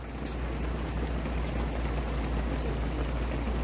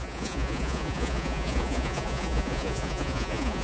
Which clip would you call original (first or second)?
first